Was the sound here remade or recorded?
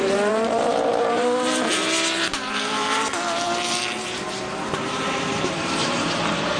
remade